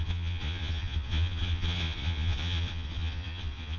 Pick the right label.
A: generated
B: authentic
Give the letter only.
A